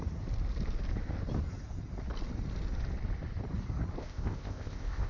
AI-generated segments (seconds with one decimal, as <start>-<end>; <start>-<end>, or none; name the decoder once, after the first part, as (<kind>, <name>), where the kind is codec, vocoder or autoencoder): 4.0-5.1 (codec, ZipCodec)